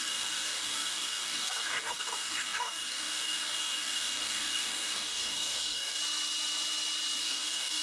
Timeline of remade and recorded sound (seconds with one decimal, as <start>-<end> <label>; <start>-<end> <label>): 0.0-6.0 remade; 6.0-7.2 recorded; 7.2-7.8 remade